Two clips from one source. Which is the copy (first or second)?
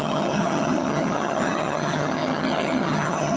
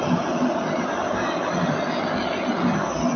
first